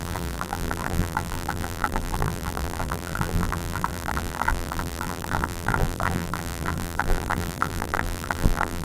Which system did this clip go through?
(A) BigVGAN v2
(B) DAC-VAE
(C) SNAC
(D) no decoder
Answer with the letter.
A